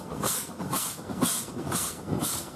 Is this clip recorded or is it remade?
remade